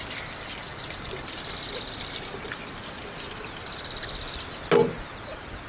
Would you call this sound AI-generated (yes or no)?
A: no